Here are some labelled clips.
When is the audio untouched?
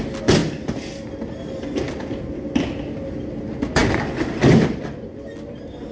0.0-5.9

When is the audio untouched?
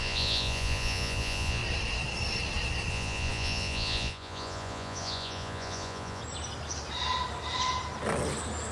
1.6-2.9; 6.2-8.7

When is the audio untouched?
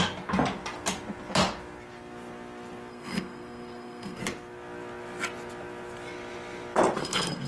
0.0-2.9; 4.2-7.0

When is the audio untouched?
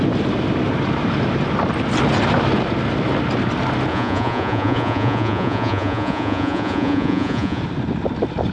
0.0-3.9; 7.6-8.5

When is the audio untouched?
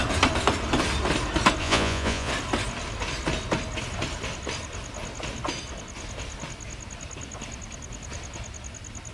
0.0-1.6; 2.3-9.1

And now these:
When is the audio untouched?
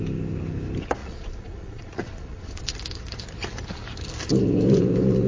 0.0-1.0; 2.6-5.3